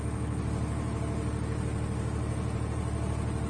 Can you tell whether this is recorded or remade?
recorded